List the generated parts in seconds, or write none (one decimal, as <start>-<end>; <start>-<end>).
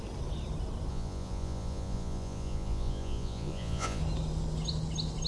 0.9-4.0